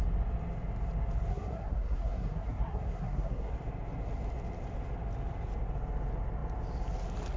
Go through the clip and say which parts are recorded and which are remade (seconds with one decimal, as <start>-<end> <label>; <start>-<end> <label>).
0.0-1.3 recorded; 1.3-3.5 remade; 3.5-7.4 recorded

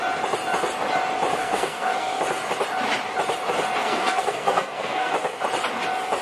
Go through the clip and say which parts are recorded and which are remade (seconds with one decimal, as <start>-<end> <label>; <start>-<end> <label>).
0.0-1.3 recorded; 1.3-2.2 remade; 2.2-3.8 recorded; 3.8-5.1 remade; 5.1-6.2 recorded

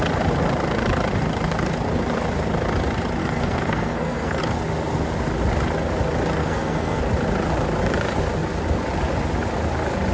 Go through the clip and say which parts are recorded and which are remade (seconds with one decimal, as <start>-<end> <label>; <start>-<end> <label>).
0.0-3.2 recorded; 3.2-4.4 remade; 4.4-6.4 recorded; 6.4-7.0 remade; 7.0-10.1 recorded

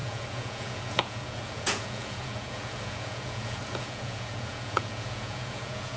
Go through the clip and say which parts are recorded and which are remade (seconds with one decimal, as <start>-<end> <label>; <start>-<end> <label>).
0.0-6.0 remade

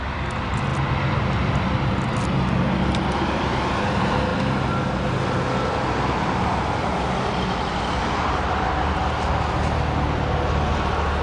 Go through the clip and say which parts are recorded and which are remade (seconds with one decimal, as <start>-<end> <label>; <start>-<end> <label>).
0.0-11.2 recorded